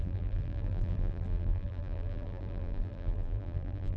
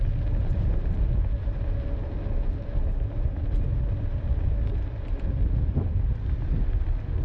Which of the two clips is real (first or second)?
second